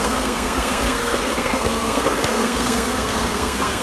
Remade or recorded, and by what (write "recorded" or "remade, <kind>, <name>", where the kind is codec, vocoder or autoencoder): remade, codec, SNAC